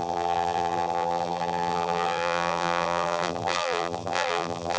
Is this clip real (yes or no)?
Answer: no